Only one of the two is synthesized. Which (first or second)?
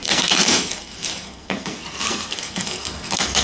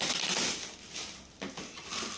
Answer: first